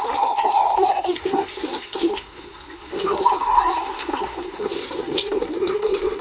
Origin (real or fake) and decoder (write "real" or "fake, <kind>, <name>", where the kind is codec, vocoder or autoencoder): fake, codec, SNAC